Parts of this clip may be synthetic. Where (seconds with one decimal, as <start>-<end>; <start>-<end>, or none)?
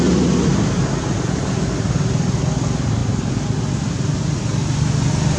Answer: none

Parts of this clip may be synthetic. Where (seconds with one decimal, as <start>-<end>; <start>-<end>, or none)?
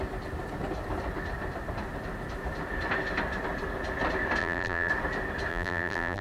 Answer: 4.4-4.9; 5.5-6.2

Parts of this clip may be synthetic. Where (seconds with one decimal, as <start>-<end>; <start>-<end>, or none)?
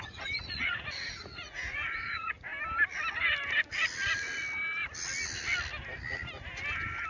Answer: 0.0-2.5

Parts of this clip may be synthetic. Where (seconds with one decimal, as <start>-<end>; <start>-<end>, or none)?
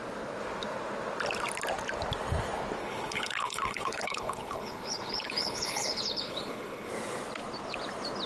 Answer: 2.8-6.9